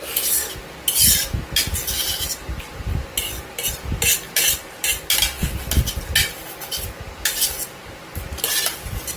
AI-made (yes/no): no